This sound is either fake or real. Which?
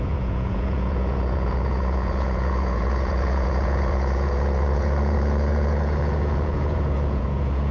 fake